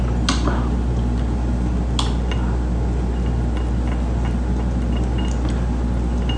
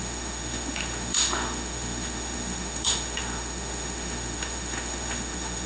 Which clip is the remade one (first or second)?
second